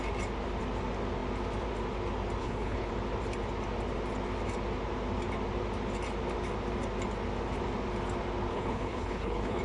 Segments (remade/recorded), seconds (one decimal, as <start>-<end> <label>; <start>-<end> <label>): 0.0-2.4 recorded; 2.4-2.9 remade; 2.9-8.5 recorded; 8.5-9.6 remade